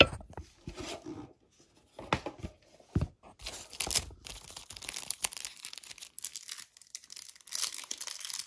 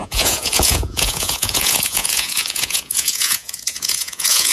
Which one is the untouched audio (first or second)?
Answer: first